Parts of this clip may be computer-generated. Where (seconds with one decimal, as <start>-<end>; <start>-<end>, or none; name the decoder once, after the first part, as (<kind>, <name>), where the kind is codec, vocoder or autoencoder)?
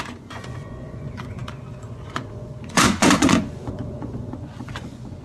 0.0-5.2 (vocoder, Vocos)